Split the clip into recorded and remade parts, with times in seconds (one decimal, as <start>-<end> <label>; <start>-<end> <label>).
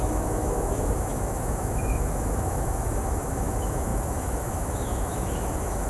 0.0-5.9 remade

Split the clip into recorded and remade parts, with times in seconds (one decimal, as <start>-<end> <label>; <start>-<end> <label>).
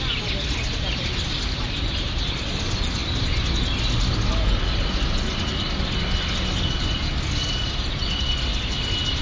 0.0-9.2 recorded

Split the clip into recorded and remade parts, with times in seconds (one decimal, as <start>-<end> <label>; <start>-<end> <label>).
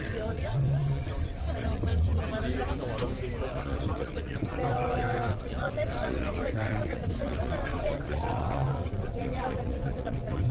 0.0-2.1 remade; 2.1-3.5 recorded; 3.5-10.5 remade